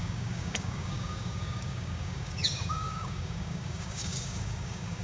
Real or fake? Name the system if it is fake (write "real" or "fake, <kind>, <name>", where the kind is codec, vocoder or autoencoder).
fake, codec, DAC